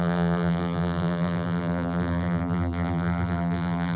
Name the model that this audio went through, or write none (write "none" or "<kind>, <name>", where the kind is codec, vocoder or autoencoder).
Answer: vocoder, BigVGAN v2